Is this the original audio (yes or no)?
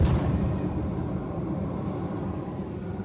no